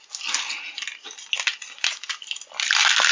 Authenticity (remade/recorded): recorded